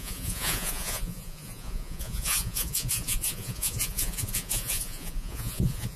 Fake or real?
fake